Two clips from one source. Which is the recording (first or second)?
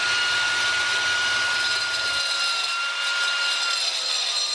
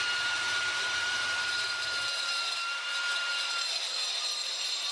first